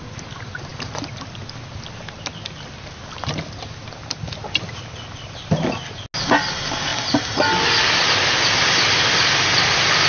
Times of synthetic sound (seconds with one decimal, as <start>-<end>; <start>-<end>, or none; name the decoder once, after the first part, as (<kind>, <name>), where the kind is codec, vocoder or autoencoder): none